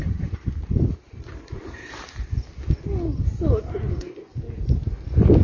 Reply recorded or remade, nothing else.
recorded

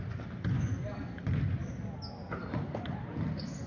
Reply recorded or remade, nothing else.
recorded